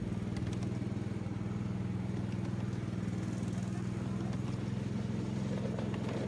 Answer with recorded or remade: recorded